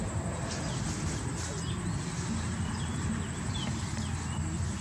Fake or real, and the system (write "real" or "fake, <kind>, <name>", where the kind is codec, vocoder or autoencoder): real